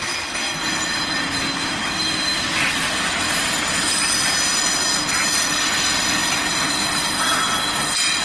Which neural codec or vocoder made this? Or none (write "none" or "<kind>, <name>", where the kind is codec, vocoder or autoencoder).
none